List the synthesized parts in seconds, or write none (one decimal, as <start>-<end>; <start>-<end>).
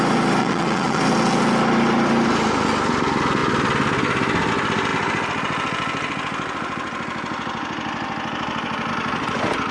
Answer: 0.4-1.0